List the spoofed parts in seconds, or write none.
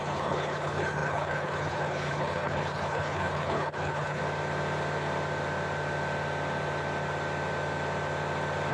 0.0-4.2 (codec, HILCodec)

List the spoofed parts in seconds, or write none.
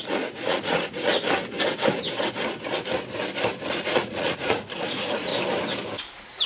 0.0-1.1 (vocoder, Vocos); 3.8-5.3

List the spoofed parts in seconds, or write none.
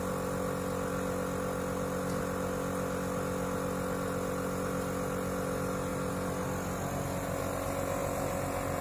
none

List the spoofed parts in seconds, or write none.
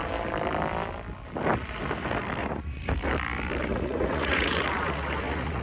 2.4-2.9 (vocoder, Vocos); 3.6-5.6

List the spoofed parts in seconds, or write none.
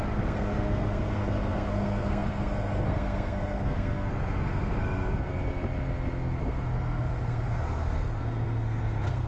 0.0-5.3 (codec, SNAC); 6.4-9.3